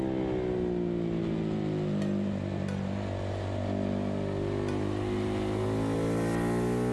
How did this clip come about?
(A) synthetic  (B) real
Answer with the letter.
B